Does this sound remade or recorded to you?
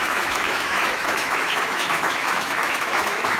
remade